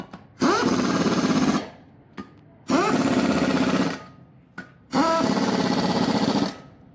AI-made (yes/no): no